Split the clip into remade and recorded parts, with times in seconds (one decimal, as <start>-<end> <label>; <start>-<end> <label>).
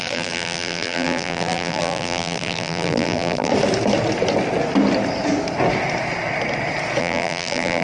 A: 0.0-3.5 remade; 3.5-7.0 recorded; 7.0-7.8 remade